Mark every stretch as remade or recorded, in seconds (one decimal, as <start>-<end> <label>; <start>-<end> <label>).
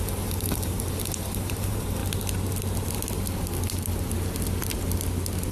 0.0-2.0 remade; 2.0-5.5 recorded